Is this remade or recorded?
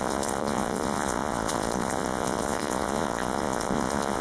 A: remade